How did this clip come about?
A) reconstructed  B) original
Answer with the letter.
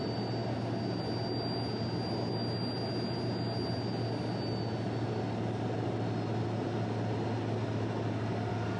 B